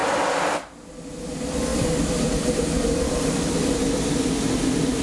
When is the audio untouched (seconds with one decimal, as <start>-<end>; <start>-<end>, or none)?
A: 1.0-1.7; 4.0-5.0

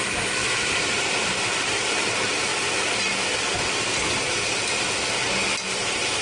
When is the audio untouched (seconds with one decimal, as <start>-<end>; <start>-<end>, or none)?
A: 2.5-5.6

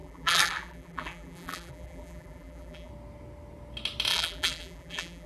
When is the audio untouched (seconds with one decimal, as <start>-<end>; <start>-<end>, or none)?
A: 2.9-4.1

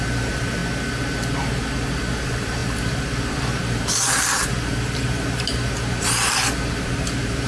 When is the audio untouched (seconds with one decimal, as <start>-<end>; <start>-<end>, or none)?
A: 0.6-2.1

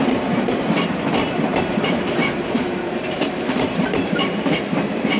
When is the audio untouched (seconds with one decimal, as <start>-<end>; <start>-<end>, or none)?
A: 0.0-1.5; 4.6-5.2

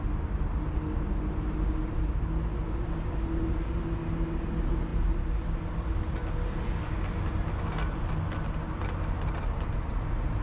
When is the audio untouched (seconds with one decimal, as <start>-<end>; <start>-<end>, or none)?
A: 0.0-10.4

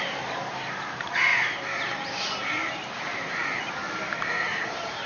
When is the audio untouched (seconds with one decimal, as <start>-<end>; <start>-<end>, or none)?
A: none